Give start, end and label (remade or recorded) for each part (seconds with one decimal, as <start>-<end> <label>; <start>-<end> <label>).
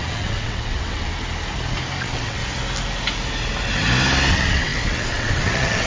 0.0-1.1 remade; 1.1-2.0 recorded; 2.0-2.4 remade; 2.4-4.3 recorded; 4.3-5.9 remade